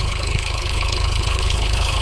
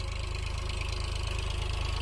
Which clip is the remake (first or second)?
first